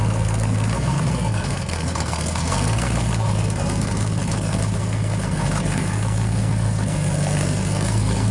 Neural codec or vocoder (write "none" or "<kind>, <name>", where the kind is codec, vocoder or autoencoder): codec, SNAC